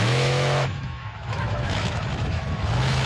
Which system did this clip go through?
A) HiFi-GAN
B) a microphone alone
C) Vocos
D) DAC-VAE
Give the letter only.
D